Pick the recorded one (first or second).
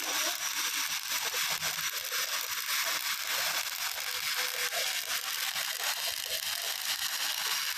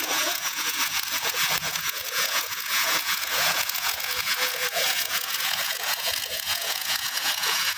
first